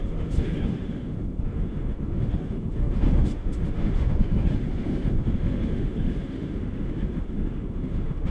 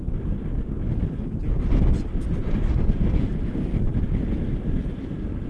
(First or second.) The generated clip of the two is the first